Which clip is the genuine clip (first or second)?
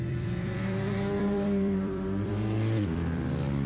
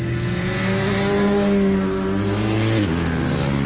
second